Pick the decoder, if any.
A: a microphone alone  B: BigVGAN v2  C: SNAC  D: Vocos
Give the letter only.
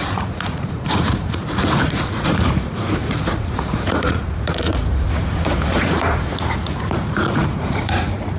D